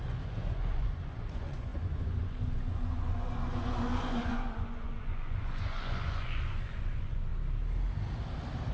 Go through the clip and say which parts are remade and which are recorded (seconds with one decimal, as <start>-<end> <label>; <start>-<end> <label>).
0.0-7.3 remade; 7.3-8.7 recorded